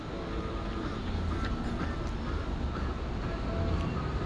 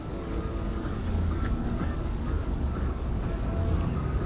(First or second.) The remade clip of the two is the second